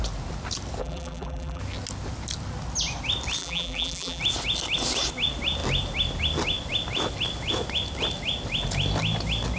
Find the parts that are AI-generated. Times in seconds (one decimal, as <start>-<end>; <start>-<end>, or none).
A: 0.8-1.6; 3.4-4.2